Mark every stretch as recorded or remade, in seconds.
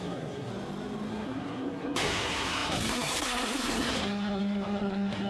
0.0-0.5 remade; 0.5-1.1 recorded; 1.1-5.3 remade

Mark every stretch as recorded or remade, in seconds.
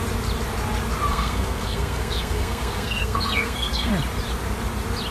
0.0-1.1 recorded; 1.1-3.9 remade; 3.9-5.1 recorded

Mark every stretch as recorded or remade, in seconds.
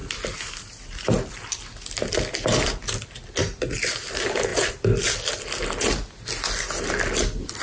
0.0-7.6 recorded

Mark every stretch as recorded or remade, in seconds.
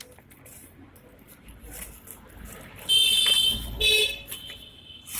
0.0-5.2 recorded